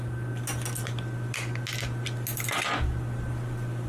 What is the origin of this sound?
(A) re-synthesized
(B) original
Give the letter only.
B